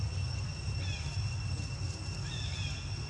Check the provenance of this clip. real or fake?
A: real